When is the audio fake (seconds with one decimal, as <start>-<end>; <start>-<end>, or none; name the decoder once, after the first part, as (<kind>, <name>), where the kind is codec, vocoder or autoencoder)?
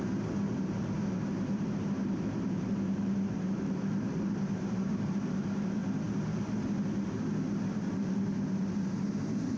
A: 0.0-5.8 (vocoder, BigVGAN v2); 7.8-9.6